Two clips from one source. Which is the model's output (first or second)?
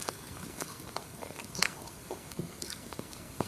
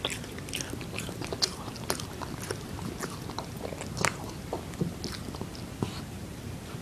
first